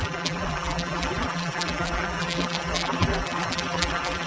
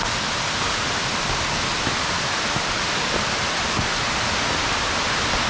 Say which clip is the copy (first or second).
first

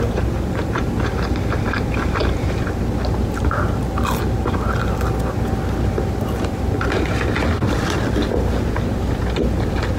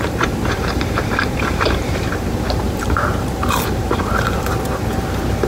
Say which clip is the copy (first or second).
second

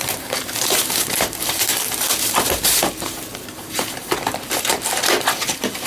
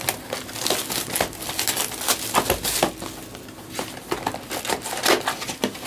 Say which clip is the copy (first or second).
first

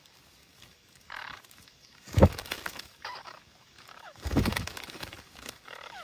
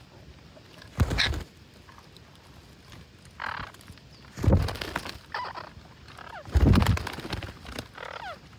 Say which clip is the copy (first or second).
first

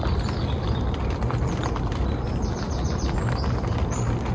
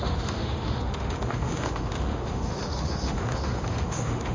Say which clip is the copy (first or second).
second